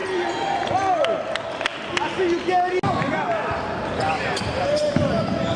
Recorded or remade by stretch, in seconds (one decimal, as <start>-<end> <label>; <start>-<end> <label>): 0.0-5.6 recorded